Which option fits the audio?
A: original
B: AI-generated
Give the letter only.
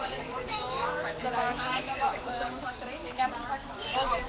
B